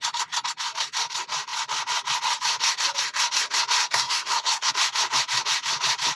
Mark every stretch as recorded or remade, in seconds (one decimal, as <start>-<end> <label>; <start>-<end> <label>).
0.0-3.8 recorded; 3.8-4.7 remade; 4.7-6.2 recorded